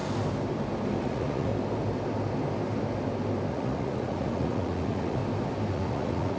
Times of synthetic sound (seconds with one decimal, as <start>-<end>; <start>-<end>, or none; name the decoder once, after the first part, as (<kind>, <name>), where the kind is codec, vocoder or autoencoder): 1.0-1.5 (vocoder, Vocos); 3.5-5.2; 5.7-6.4